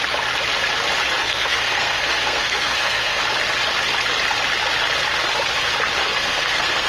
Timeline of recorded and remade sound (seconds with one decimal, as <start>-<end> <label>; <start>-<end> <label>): 0.0-1.2 recorded; 1.2-3.2 remade; 3.2-6.0 recorded; 6.0-6.9 remade